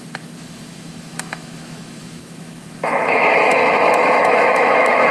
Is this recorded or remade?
remade